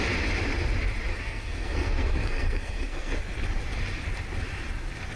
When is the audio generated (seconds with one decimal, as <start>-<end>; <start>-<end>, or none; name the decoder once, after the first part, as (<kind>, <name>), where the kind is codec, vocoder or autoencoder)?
1.1-3.2 (codec, SNAC)